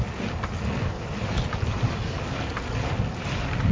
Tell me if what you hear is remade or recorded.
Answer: recorded